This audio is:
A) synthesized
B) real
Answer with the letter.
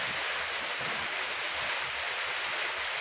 B